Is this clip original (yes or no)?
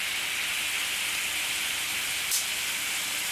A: yes